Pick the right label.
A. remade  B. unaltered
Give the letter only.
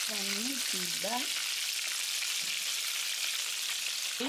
B